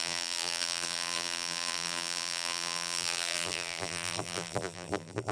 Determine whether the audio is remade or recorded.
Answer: remade